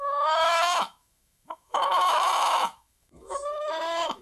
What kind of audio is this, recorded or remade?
remade